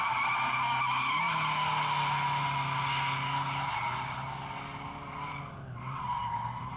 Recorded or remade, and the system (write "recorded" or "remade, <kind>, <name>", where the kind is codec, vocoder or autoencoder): recorded